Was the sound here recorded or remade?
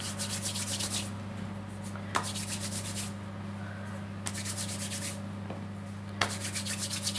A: recorded